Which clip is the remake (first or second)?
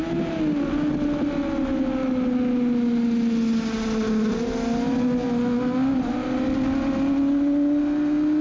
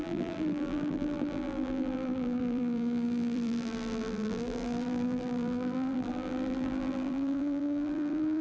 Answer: second